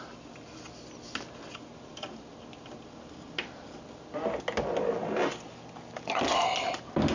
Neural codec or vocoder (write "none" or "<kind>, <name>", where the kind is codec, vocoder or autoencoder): none